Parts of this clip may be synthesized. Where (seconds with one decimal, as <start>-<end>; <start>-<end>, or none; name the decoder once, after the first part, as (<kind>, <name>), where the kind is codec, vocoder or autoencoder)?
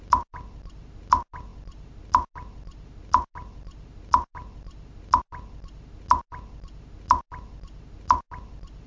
none